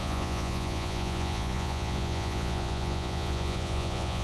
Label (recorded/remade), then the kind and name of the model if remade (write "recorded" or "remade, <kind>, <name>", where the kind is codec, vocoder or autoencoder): remade, vocoder, Vocos